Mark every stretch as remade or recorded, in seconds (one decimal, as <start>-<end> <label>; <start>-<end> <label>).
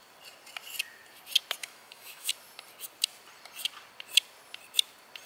0.0-1.6 recorded; 1.6-2.3 remade; 2.3-5.3 recorded